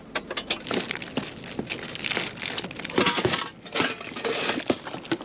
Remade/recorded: recorded